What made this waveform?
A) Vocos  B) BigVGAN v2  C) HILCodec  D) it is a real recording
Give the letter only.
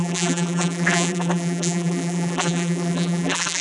B